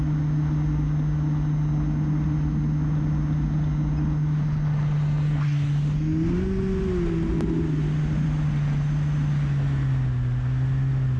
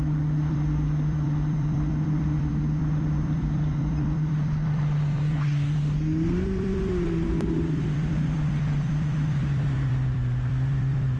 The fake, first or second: second